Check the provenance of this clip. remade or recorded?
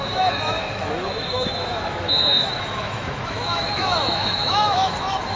remade